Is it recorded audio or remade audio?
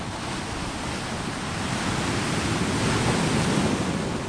remade